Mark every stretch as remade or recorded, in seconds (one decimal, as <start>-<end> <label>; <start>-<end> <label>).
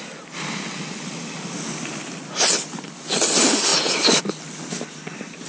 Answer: 0.0-5.5 recorded